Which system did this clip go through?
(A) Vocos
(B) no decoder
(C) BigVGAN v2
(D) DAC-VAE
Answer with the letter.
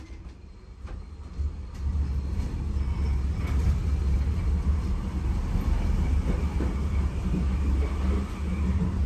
B